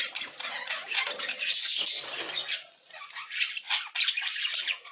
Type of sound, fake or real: real